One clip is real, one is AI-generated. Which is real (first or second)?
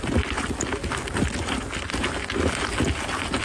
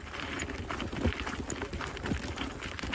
first